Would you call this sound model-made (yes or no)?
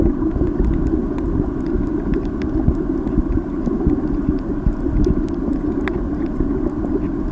no